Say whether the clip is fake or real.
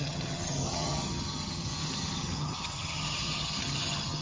fake